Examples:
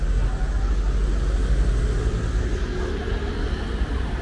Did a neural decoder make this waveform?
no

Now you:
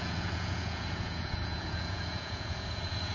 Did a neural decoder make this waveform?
yes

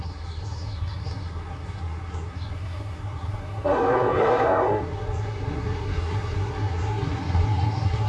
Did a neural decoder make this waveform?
yes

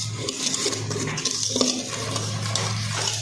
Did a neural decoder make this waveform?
no